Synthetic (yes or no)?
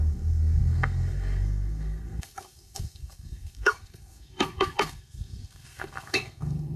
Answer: yes